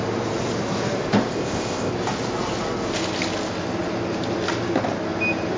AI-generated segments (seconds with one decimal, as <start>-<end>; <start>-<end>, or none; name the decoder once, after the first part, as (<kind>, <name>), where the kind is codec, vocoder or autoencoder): 1.3-1.9 (codec, ZipCodec)